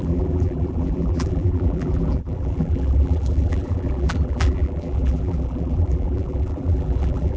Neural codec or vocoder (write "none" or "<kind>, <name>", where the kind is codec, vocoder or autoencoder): vocoder, BigVGAN v2